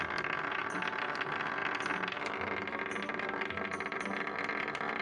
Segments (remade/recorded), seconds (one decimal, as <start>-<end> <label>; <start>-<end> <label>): 0.0-5.0 recorded